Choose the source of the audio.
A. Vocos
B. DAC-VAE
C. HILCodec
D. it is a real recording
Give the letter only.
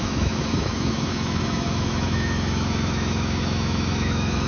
B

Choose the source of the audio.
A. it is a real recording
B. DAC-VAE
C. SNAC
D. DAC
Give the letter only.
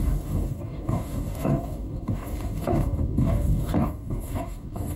D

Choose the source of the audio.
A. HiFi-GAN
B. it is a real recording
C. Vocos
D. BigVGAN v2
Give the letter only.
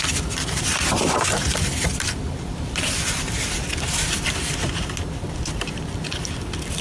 D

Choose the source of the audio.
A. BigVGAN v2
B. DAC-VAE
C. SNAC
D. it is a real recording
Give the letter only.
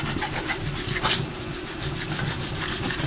D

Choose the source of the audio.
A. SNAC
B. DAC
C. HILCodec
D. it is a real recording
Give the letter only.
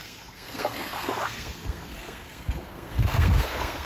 A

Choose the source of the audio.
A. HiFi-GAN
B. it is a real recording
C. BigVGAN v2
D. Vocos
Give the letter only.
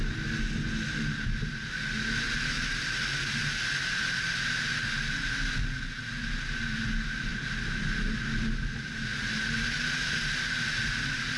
B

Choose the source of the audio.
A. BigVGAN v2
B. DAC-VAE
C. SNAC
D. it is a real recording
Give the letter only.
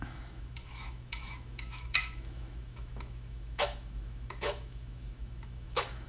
B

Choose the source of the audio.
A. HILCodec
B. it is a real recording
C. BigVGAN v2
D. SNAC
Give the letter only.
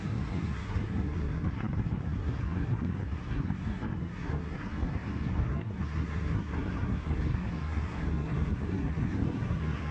D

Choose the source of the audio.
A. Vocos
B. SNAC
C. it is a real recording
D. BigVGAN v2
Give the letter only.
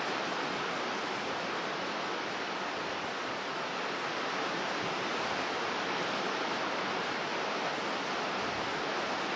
C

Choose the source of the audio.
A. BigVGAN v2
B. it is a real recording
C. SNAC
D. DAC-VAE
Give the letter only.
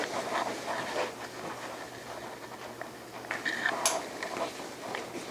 B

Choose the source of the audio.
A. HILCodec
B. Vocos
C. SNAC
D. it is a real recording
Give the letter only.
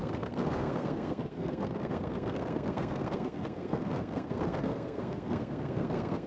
C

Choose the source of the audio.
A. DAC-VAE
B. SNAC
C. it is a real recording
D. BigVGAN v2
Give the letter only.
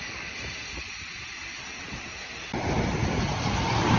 C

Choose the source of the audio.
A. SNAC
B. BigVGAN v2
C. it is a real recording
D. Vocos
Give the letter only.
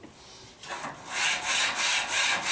C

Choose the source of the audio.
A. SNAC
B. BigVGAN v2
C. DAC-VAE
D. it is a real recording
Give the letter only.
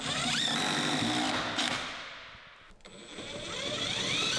D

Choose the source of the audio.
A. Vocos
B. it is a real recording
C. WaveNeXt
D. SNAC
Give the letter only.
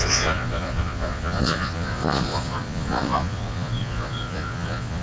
A